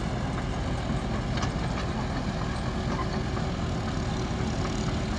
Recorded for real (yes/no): yes